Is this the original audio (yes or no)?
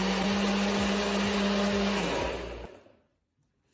yes